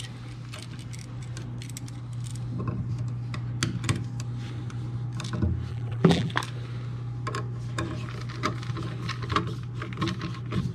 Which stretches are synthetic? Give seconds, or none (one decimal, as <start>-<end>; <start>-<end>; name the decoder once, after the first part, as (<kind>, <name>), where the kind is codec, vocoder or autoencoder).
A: 5.7-6.3 (vocoder, BigVGAN v2)